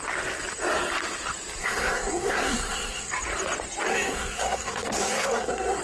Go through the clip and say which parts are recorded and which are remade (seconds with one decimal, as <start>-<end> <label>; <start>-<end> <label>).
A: 0.0-1.6 recorded; 1.6-3.1 remade; 3.1-3.9 recorded; 3.9-5.8 remade